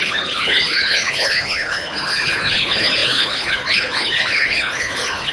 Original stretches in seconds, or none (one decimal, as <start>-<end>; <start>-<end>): none